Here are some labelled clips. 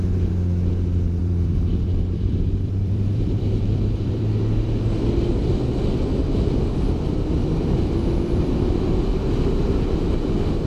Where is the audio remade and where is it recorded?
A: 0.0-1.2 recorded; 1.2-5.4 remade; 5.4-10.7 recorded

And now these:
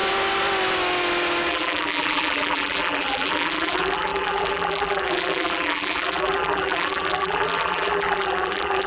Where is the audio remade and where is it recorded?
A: 0.0-1.5 recorded; 1.5-8.9 remade

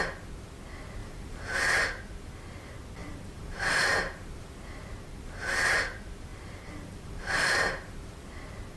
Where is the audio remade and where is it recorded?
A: 0.0-1.0 recorded; 1.0-1.6 remade; 1.6-3.0 recorded; 3.0-4.7 remade; 4.7-6.3 recorded; 6.3-8.3 remade; 8.3-8.8 recorded

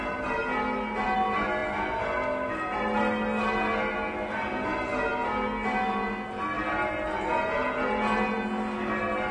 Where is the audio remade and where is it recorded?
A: 0.0-9.3 recorded

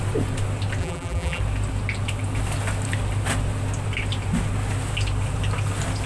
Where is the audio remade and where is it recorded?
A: 0.0-0.8 recorded; 0.8-1.4 remade; 1.4-6.1 recorded